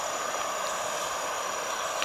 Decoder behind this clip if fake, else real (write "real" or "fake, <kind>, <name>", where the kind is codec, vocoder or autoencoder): real